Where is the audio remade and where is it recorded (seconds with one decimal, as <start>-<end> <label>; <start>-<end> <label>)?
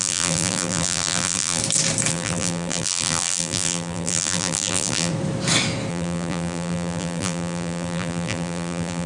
0.0-1.6 remade; 1.6-2.1 recorded; 2.1-5.1 remade; 5.1-5.9 recorded; 5.9-9.1 remade